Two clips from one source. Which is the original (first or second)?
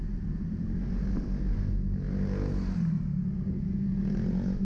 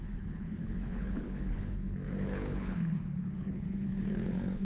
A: first